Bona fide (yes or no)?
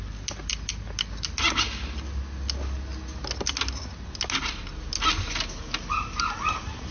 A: yes